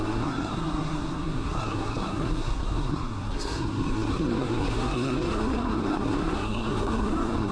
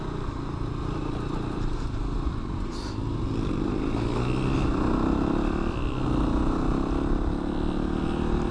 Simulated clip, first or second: first